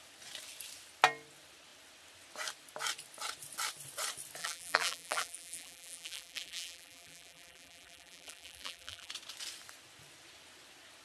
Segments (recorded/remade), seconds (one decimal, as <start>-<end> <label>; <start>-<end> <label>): 0.0-4.4 recorded; 4.4-9.1 remade; 9.1-11.0 recorded